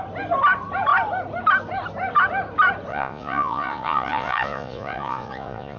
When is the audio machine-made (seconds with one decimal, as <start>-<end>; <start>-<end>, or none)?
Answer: 2.9-5.8